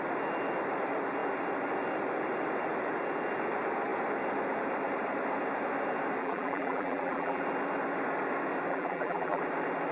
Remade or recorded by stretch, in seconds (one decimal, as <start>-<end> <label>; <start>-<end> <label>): 0.0-6.2 recorded; 6.2-7.4 remade; 7.4-8.7 recorded; 8.7-9.4 remade; 9.4-9.9 recorded